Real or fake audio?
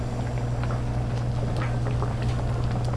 real